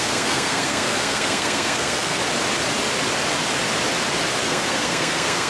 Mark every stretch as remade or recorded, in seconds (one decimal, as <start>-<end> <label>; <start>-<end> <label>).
0.0-2.2 remade; 2.2-4.4 recorded; 4.4-5.5 remade